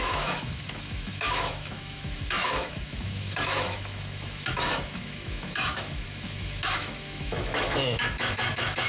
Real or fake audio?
fake